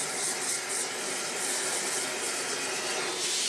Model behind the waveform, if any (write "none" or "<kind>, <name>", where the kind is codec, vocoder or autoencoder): none